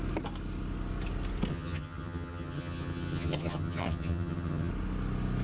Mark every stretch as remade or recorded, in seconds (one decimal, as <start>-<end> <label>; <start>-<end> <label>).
0.0-1.5 recorded; 1.5-4.7 remade; 4.7-5.4 recorded